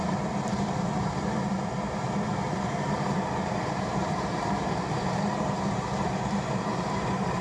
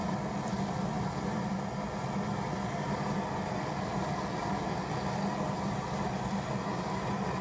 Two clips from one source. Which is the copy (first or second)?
first